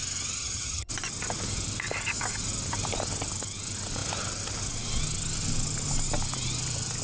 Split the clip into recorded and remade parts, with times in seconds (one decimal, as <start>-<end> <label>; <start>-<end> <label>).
0.0-0.4 recorded; 0.4-0.9 remade; 0.9-7.0 recorded